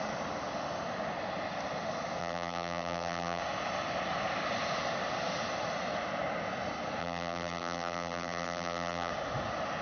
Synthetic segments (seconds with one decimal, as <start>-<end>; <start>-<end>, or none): 2.2-3.4; 7.0-9.1